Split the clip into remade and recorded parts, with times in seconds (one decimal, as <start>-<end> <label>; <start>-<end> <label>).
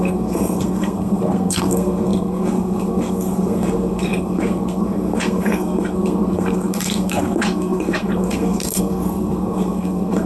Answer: 0.0-10.3 remade